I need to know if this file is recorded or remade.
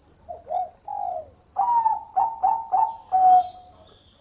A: recorded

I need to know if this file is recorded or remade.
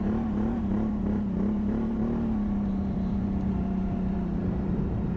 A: remade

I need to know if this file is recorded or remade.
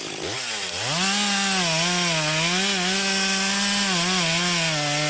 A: recorded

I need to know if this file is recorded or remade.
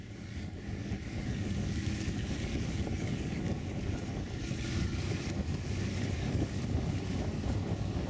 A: remade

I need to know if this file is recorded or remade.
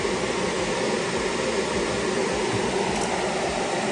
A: recorded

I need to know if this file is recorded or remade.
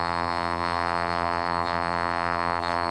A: remade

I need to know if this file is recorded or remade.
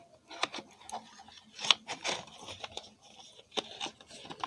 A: recorded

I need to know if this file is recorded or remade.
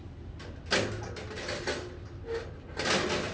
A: recorded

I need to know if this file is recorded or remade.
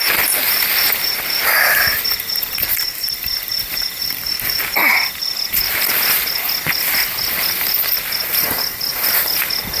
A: recorded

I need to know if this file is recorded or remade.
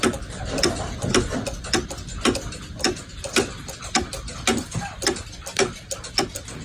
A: recorded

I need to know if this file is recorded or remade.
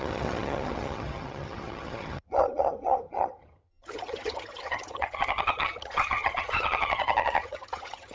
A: remade